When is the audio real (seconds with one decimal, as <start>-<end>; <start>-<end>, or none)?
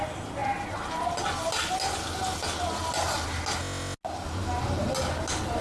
0.0-5.6